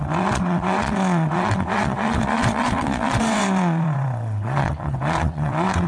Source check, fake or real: fake